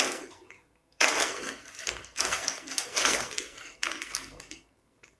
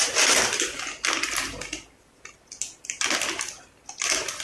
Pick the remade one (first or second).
first